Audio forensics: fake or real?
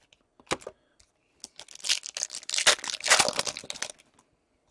real